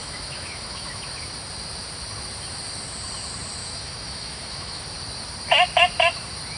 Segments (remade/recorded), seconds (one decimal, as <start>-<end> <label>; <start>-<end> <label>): 0.0-1.0 remade; 1.0-3.6 recorded; 3.6-4.8 remade; 4.8-6.6 recorded